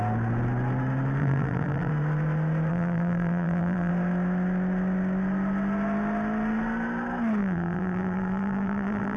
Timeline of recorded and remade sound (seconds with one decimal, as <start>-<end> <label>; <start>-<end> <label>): 0.0-1.2 recorded; 1.2-1.9 remade; 1.9-2.7 recorded; 2.7-3.9 remade; 3.9-7.4 recorded; 7.4-9.2 remade